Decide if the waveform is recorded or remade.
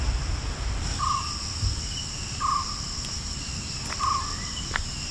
recorded